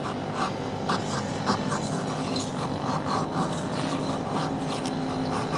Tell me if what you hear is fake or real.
real